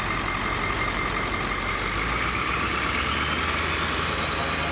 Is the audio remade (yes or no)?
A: no